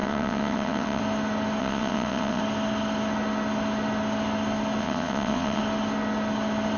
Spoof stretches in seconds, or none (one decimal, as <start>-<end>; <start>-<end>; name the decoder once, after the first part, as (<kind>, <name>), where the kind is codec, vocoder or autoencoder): 0.0-1.0 (vocoder, WaveNeXt); 1.6-2.4; 4.8-5.6